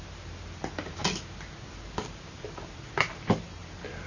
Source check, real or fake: real